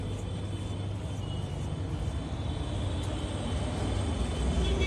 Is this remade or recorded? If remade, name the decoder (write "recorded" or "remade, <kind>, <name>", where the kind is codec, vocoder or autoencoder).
recorded